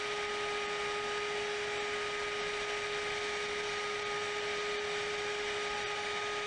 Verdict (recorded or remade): recorded